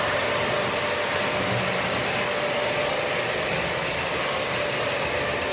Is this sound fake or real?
real